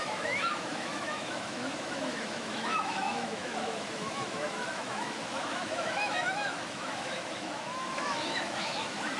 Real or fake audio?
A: fake